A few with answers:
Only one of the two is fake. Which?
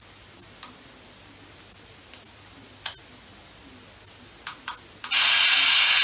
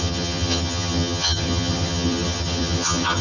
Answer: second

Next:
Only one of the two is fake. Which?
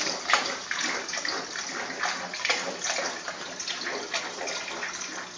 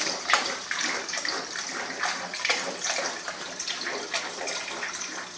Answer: second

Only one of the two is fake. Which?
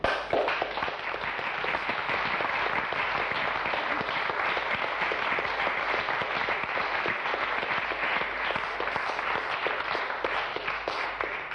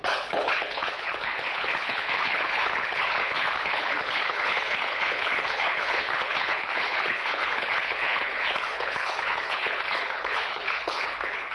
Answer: second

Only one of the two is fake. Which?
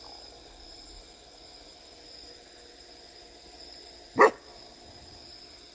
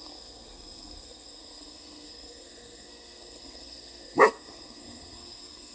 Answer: second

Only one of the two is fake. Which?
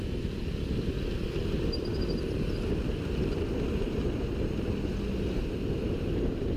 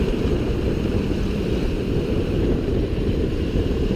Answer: second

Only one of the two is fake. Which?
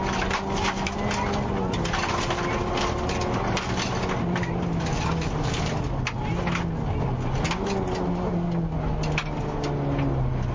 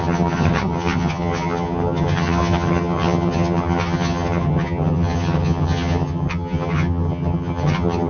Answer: second